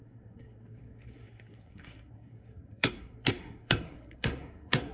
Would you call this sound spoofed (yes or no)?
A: yes